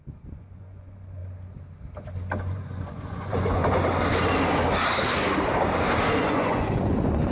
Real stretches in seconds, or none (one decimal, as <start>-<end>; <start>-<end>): 1.2-2.4; 3.6-6.2